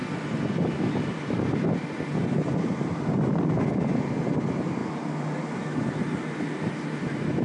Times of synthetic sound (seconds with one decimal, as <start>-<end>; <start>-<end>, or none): none